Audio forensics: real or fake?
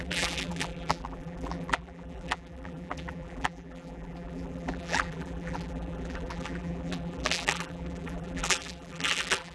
fake